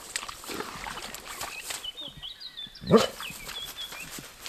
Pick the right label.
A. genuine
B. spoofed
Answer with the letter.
A